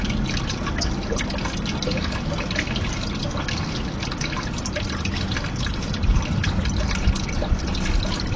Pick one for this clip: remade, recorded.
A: recorded